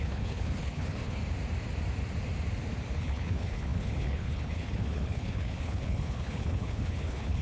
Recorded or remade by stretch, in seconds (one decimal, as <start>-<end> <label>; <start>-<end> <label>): 0.0-1.2 remade; 1.2-3.0 recorded; 3.0-7.4 remade